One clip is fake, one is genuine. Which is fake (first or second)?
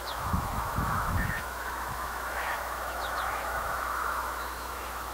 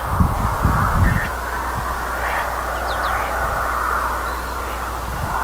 first